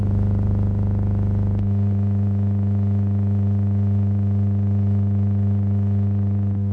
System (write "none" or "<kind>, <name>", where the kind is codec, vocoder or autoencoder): none